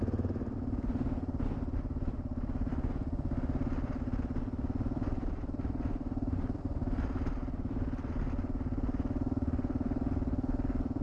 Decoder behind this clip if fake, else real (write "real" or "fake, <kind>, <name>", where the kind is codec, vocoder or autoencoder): fake, vocoder, BigVGAN v2